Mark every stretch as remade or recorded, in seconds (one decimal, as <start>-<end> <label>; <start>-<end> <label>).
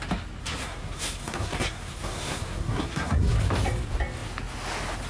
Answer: 0.0-0.4 recorded; 0.4-3.4 remade; 3.4-5.1 recorded